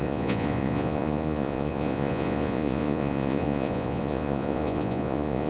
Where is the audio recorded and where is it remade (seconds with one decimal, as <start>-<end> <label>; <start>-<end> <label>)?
0.0-5.5 remade